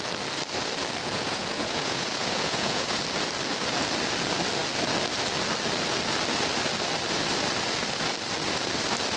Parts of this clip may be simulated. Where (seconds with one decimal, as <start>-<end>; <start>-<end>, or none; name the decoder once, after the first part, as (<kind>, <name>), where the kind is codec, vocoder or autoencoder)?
1.0-3.0 (vocoder, Vocos)